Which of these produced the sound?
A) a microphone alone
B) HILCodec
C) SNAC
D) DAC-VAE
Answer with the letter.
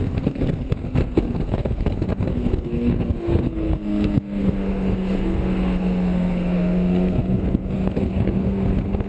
C